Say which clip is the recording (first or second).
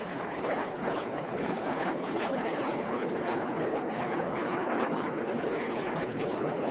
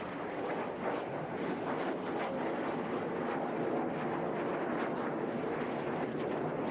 second